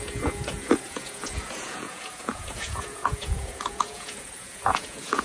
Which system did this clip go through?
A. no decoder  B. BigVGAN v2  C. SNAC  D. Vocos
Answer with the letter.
D